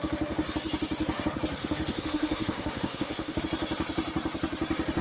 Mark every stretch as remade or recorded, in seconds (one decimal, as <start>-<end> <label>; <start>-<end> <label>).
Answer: 0.0-1.6 recorded; 1.6-3.4 remade; 3.4-5.0 recorded